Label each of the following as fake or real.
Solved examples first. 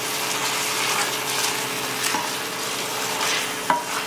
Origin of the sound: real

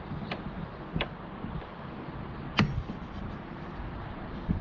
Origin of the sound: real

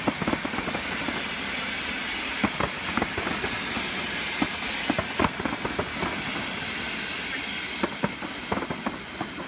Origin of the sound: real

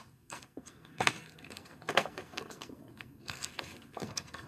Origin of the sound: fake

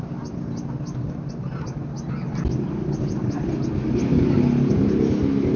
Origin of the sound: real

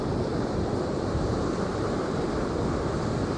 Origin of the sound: real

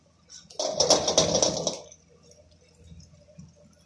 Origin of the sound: real